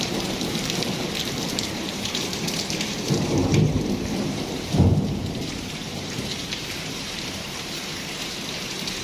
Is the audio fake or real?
fake